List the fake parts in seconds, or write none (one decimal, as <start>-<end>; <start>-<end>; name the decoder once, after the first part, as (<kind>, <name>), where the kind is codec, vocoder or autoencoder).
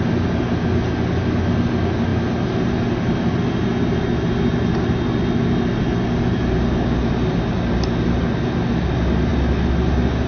none